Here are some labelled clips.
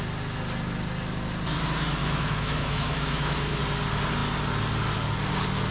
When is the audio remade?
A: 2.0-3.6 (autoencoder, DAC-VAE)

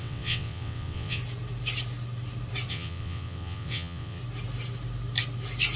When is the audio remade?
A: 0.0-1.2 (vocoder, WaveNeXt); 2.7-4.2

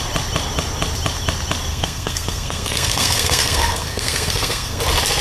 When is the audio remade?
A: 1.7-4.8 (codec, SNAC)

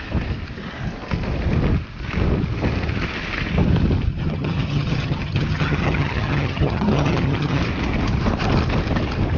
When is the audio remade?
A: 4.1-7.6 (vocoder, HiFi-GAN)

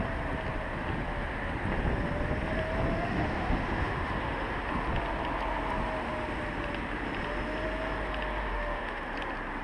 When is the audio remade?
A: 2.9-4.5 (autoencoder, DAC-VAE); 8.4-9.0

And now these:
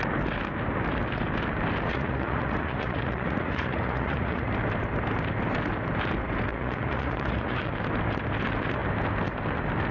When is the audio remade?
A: 1.9-4.5 (vocoder, Vocos); 6.5-7.7

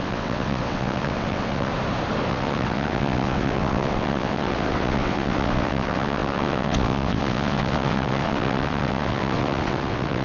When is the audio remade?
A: 0.0-1.7 (vocoder, WaveNeXt); 2.3-10.2

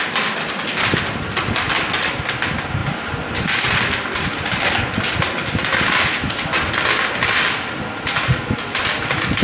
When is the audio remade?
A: none